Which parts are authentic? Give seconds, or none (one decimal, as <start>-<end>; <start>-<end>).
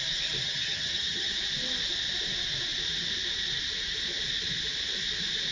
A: 0.0-0.4; 1.3-5.5